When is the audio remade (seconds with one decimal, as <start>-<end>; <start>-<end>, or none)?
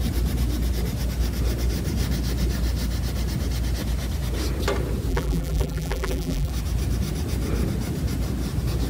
5.1-6.5